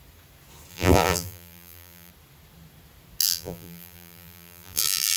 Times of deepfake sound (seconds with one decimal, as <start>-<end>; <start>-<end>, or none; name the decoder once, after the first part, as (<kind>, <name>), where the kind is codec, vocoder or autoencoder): 0.7-2.1 (vocoder, BigVGAN v2); 3.2-5.2